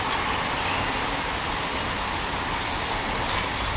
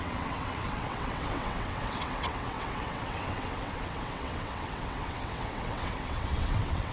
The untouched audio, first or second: first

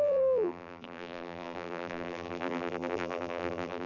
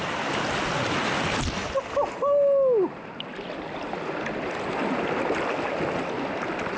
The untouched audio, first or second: second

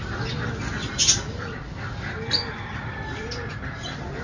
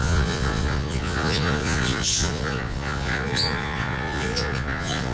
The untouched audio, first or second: first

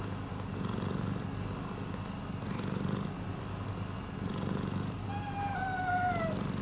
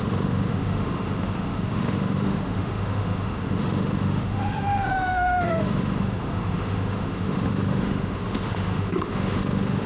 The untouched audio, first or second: first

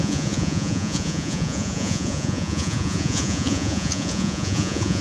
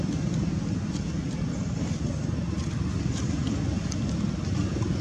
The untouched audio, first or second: second